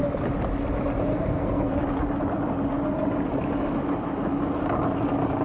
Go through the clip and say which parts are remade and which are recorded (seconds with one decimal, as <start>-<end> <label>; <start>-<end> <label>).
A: 0.0-1.1 recorded; 1.1-1.7 remade; 1.7-5.4 recorded